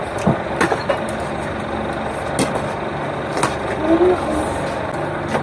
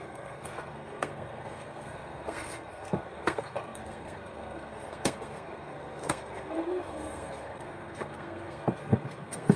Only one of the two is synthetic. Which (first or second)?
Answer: second